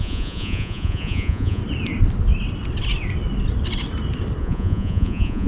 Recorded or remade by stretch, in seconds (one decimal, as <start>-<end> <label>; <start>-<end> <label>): 0.0-1.6 remade; 1.6-4.4 recorded; 4.4-5.5 remade